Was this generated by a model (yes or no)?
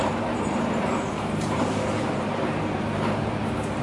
yes